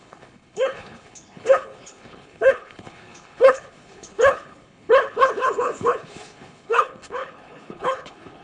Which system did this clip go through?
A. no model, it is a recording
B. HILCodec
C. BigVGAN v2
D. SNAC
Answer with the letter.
B